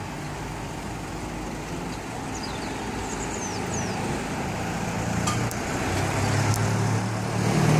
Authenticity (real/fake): real